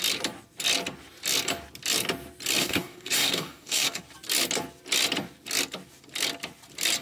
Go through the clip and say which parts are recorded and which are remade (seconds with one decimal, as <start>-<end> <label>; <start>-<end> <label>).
0.0-2.6 recorded; 2.6-4.0 remade; 4.0-7.0 recorded